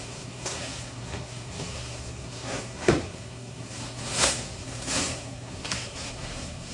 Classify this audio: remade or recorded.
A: remade